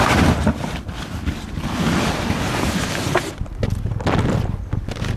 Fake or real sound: real